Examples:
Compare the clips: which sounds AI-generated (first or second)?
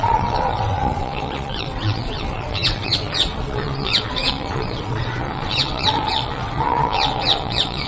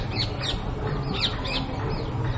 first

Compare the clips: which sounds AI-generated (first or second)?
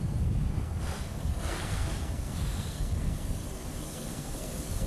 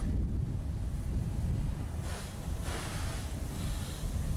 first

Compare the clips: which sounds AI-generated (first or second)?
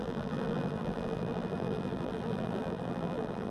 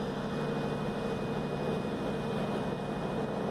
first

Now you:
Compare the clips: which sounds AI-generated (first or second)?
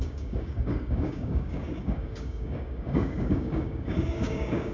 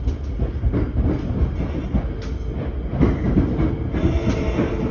first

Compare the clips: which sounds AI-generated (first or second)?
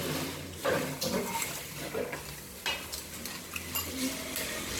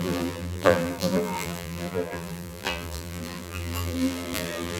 second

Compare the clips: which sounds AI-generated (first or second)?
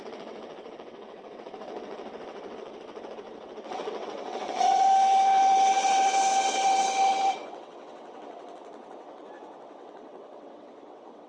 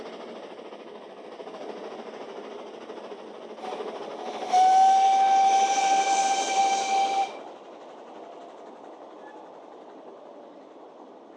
first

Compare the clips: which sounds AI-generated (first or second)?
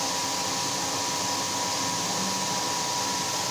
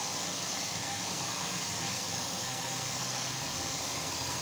second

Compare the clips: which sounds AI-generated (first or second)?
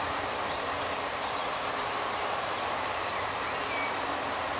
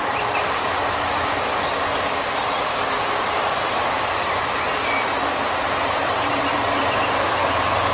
second